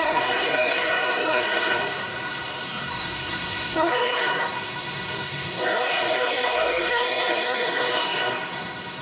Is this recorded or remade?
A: remade